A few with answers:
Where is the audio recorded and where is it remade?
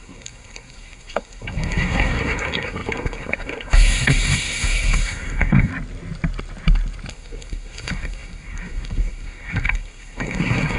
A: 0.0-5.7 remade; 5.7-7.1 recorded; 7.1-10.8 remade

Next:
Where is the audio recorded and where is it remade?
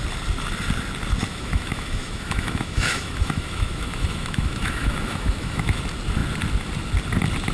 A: 0.0-1.3 recorded; 1.3-5.8 remade; 5.8-7.5 recorded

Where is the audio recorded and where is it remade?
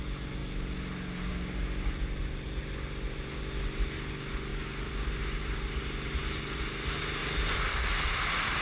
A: 0.0-8.6 recorded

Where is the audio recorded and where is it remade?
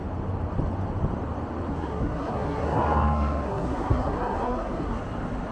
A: 0.0-1.7 recorded; 1.7-5.0 remade; 5.0-5.5 recorded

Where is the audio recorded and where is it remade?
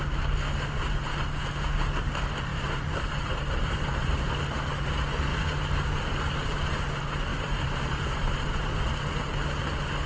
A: 0.0-2.5 recorded; 2.5-4.2 remade; 4.2-5.3 recorded; 5.3-6.2 remade; 6.2-7.3 recorded; 7.3-8.8 remade; 8.8-10.1 recorded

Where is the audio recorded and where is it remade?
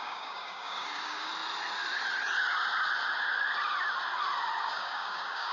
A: 0.0-1.3 remade; 1.3-4.6 recorded; 4.6-5.5 remade